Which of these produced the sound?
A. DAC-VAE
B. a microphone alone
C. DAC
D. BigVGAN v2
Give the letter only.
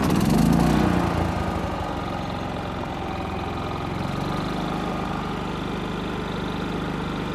B